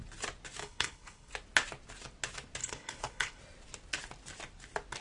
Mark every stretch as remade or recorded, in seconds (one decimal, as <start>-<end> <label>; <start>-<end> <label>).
0.0-0.6 recorded; 0.6-1.3 remade; 1.3-2.6 recorded; 2.6-3.4 remade; 3.4-5.0 recorded